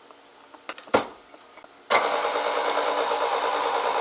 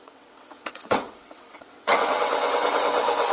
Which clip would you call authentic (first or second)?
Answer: first